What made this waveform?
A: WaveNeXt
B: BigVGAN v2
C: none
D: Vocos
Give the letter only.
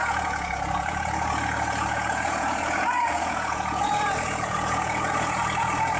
D